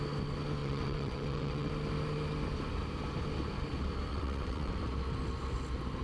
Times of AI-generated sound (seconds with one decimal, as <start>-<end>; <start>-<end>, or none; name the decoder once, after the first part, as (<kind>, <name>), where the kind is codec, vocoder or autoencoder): 0.6-1.7 (vocoder, WaveNeXt); 4.1-4.8